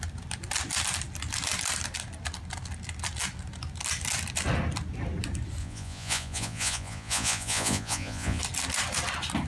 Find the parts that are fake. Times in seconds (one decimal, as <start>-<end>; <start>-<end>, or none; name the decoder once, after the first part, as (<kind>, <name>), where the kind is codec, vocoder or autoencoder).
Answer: 5.6-8.4 (vocoder, Vocos)